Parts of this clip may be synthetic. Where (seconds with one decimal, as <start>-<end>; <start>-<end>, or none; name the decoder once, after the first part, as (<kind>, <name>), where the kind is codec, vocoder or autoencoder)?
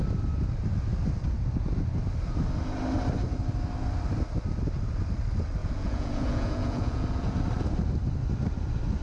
5.6-7.4 (vocoder, Vocos)